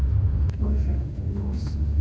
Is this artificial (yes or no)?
yes